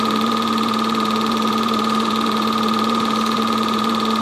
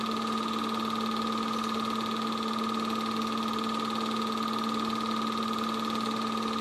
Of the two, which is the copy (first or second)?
first